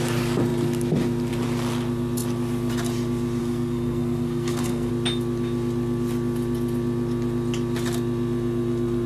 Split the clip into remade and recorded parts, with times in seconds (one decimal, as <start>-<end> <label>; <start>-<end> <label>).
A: 0.0-3.4 recorded; 3.4-4.9 remade; 4.9-9.1 recorded